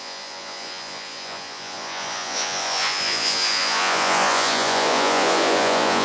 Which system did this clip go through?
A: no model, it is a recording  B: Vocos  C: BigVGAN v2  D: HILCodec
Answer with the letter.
B